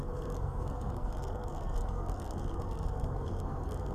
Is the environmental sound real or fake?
fake